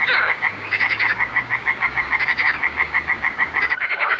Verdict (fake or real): fake